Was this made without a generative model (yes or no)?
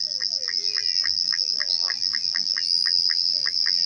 no